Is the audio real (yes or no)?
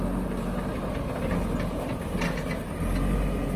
yes